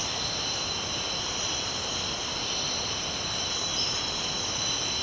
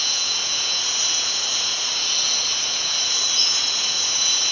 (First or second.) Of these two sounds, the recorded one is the first